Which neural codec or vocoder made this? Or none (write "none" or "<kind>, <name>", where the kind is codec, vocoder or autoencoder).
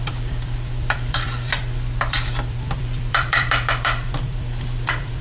vocoder, BigVGAN v2